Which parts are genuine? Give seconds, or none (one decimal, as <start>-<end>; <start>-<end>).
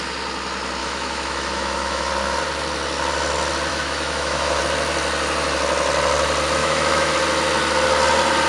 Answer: 0.0-0.8; 2.1-3.7; 4.6-6.6; 7.1-8.5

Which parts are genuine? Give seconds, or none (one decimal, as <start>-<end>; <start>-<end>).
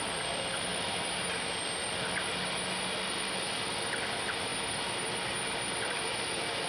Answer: 0.7-3.5; 4.5-5.8